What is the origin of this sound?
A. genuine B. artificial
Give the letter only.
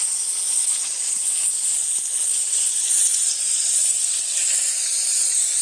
A